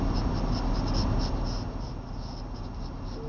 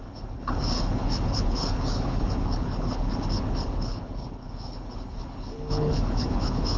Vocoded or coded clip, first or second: second